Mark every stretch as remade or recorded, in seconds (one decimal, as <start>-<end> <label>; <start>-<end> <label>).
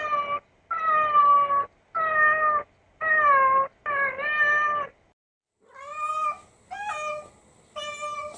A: 0.0-8.4 recorded